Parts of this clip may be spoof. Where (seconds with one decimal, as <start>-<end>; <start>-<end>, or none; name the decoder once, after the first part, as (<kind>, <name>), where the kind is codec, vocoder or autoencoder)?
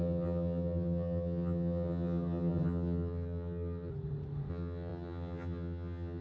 0.0-3.9 (vocoder, HiFi-GAN); 4.5-6.2